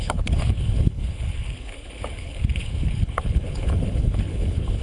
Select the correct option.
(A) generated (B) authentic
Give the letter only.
A